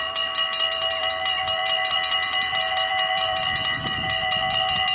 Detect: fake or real fake